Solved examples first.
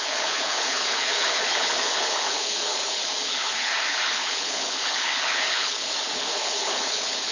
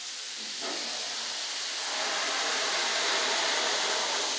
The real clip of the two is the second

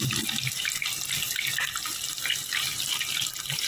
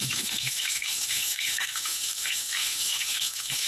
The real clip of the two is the first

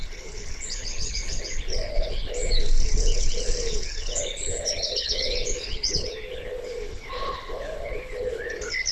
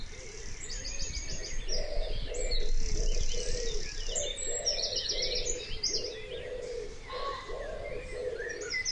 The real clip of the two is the second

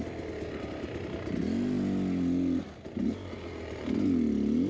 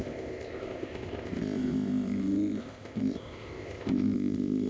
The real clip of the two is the first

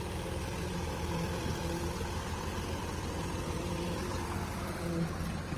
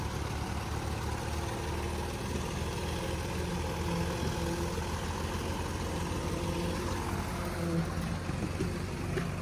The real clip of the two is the second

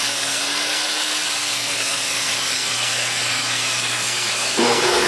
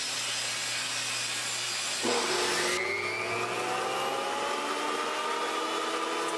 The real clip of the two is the second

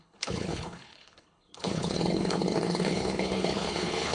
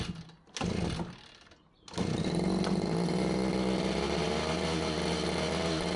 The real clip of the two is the second